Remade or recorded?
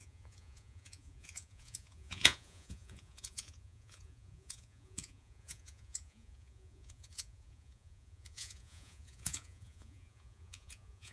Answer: remade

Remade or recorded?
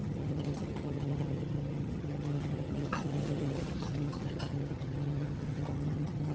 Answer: remade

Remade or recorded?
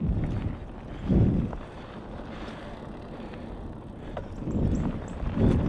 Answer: recorded